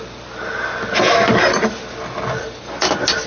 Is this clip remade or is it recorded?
recorded